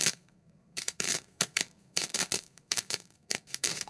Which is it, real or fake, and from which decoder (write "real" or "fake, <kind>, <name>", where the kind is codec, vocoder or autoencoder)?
fake, codec, SNAC